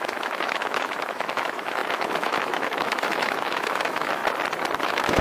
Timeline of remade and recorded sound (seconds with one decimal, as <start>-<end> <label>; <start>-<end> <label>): 0.0-4.2 remade; 4.2-4.8 recorded; 4.8-5.2 remade